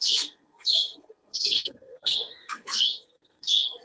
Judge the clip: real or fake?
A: fake